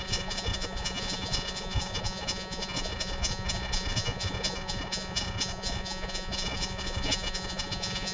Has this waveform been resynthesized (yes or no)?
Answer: yes